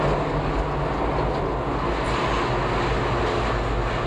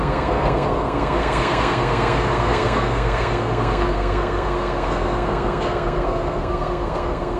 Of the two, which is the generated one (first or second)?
second